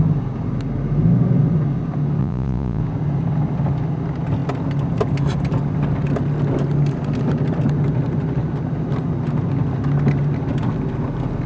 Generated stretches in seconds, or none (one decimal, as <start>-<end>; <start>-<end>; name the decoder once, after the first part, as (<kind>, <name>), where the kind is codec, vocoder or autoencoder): 2.2-2.8 (vocoder, Vocos)